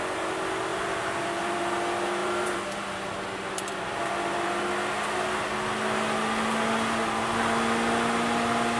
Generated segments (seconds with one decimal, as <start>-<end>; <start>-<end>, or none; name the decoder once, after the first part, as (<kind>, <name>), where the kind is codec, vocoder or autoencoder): 0.7-1.7 (vocoder, BigVGAN v2); 2.2-4.6